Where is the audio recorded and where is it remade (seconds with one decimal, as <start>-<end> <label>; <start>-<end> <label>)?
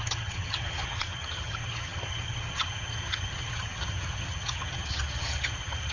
0.0-5.9 remade